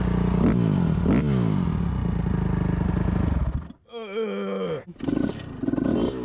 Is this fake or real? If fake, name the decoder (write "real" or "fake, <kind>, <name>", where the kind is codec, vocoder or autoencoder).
real